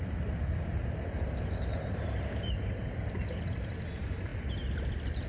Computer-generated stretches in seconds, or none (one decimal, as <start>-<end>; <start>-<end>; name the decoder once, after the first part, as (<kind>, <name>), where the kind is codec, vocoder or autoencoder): 1.7-2.5 (vocoder, BigVGAN v2)